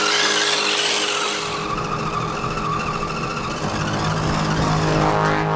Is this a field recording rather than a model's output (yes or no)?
yes